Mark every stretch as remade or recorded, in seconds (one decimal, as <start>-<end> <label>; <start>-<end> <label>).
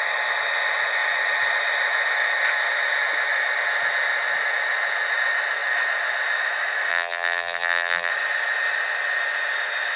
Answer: 0.0-6.9 recorded; 6.9-8.1 remade; 8.1-10.0 recorded